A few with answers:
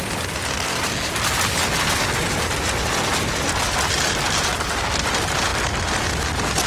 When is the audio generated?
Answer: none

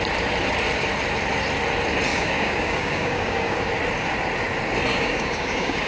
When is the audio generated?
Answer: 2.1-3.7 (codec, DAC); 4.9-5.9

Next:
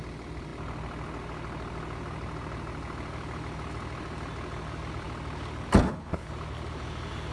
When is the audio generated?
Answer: 5.8-6.3 (codec, HILCodec)

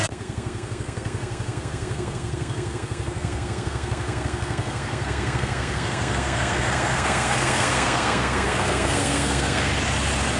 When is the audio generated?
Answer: 0.0-9.7 (codec, SNAC)